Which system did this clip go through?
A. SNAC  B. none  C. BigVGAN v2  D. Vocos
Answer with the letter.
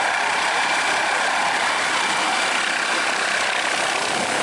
B